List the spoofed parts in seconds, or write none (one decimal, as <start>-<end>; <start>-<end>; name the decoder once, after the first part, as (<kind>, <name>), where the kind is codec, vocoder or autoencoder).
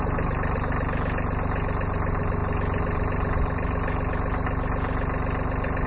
none